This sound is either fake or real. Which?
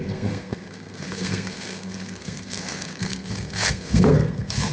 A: fake